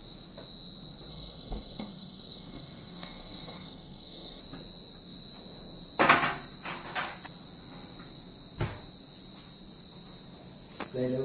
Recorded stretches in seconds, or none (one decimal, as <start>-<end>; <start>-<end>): 0.0-1.1; 4.4-11.2